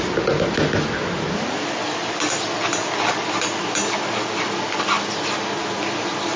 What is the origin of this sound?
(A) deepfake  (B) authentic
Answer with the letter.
B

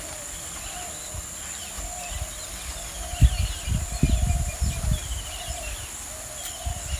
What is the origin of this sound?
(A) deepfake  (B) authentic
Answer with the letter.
B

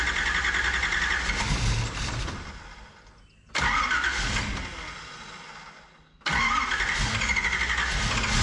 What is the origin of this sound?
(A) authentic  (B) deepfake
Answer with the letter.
A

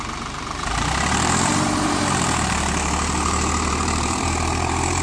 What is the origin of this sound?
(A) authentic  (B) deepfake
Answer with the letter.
B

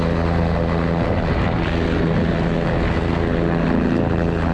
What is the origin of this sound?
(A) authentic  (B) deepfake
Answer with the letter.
A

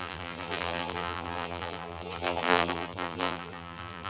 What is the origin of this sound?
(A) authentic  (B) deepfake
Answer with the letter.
B